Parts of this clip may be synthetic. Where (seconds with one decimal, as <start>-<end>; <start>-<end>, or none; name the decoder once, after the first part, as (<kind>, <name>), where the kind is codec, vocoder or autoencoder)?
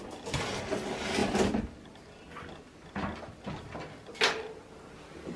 none